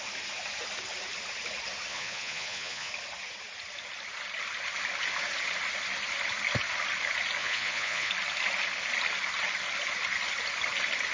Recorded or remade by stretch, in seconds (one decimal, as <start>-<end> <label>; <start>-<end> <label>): 0.0-1.9 recorded; 1.9-2.9 remade; 2.9-7.4 recorded; 7.4-8.1 remade; 8.1-11.1 recorded